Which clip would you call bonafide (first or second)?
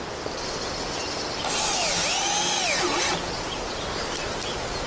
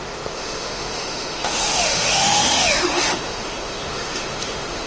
first